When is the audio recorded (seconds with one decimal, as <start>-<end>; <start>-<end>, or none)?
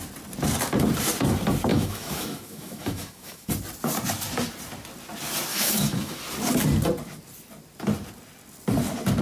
0.0-1.7; 3.5-5.5; 6.2-9.2